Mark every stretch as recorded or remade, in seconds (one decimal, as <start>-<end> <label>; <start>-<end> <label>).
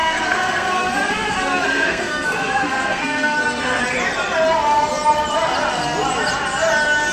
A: 0.0-3.8 remade; 3.8-7.1 recorded